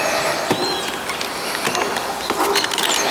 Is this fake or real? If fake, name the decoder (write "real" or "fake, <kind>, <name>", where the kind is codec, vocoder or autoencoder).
real